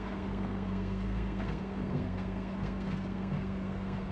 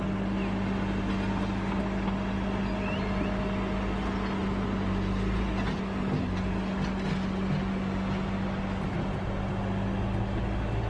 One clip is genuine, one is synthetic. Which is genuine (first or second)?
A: second